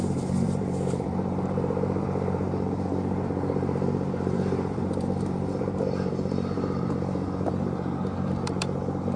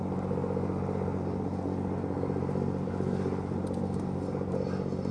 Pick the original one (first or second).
second